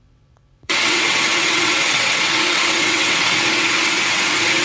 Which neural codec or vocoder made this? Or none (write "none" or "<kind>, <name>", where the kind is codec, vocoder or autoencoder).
vocoder, WaveNeXt